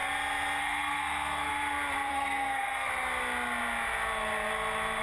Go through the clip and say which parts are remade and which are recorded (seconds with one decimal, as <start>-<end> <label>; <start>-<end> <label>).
0.0-0.6 recorded; 0.6-1.5 remade; 1.5-2.1 recorded; 2.1-2.9 remade; 2.9-5.0 recorded